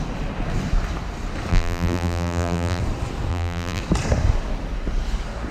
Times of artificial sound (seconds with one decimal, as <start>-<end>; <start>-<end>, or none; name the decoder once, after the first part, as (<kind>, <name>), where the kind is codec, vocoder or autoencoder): 1.5-2.8 (vocoder, BigVGAN v2); 3.3-3.8